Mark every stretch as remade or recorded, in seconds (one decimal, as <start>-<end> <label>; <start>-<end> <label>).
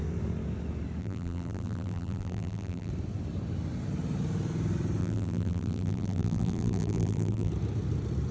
0.0-1.0 recorded; 1.0-2.9 remade; 2.9-5.0 recorded; 5.0-7.5 remade; 7.5-8.3 recorded